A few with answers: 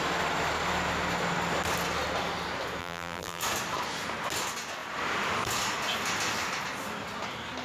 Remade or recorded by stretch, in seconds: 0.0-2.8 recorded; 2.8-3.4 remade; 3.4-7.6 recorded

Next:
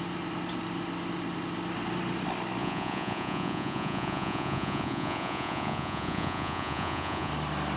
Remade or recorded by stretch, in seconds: 0.0-2.6 recorded; 2.6-7.3 remade; 7.3-7.8 recorded